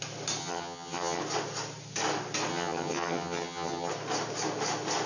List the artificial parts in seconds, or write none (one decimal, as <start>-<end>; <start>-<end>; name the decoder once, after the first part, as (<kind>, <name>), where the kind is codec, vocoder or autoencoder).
0.4-1.2 (vocoder, HiFi-GAN); 2.5-3.9